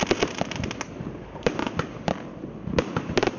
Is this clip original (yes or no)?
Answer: yes